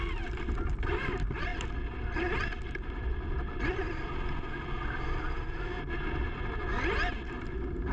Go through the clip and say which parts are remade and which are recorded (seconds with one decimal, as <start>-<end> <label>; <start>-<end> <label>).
0.0-1.5 recorded; 1.5-5.8 remade; 5.8-6.6 recorded; 6.6-7.1 remade; 7.1-7.9 recorded